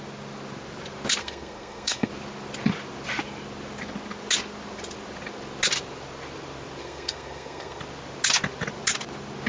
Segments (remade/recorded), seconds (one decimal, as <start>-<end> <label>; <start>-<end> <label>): 0.0-1.2 recorded; 1.2-2.1 remade; 2.1-6.8 recorded; 6.8-7.8 remade; 7.8-9.5 recorded